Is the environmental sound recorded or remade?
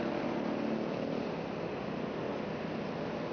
recorded